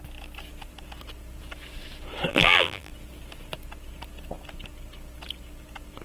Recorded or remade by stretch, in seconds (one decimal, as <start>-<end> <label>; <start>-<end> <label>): 0.0-2.3 recorded; 2.3-2.9 remade; 2.9-6.0 recorded